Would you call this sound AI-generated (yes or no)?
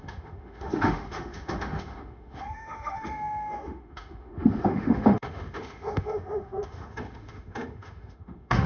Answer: yes